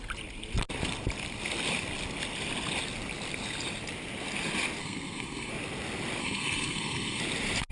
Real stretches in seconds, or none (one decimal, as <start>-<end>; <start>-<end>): 0.0-4.8; 5.5-6.2; 7.2-7.7